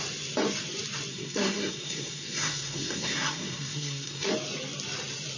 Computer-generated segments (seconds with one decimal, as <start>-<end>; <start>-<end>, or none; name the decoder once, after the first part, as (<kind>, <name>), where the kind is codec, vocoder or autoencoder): 1.1-4.3 (codec, SNAC)